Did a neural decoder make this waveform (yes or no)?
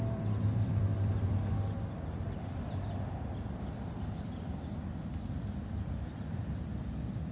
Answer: yes